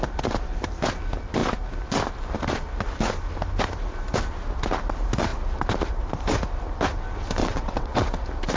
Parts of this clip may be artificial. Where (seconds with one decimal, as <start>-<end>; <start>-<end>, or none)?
7.4-8.0